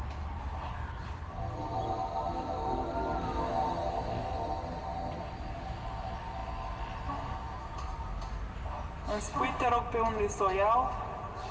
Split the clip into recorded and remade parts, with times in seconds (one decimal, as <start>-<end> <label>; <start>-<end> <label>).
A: 0.0-11.5 recorded